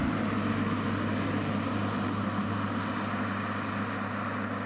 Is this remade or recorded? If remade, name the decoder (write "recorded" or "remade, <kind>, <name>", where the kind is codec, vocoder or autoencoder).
recorded